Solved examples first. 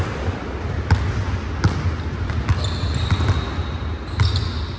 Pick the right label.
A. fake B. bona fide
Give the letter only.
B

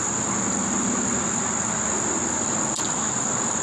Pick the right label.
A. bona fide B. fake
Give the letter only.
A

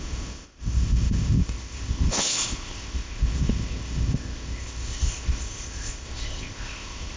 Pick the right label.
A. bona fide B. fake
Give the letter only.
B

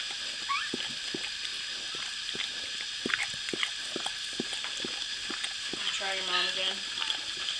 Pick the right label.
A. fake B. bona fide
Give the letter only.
B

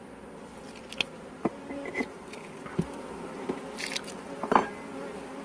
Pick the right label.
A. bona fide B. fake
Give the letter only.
A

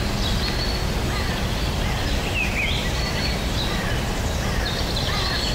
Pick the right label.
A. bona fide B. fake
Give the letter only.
A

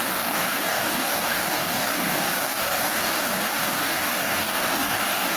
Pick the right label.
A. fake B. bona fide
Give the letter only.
A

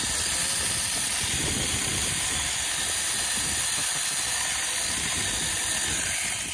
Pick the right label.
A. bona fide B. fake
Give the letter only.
B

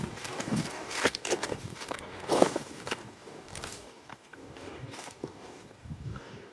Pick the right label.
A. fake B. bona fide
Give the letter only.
A